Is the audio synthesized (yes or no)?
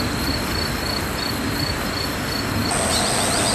no